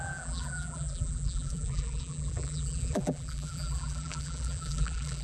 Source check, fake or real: fake